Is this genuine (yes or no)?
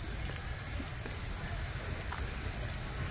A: yes